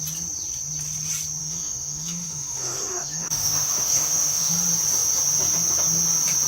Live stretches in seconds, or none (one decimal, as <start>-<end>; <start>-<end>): 0.0-1.4; 4.5-6.5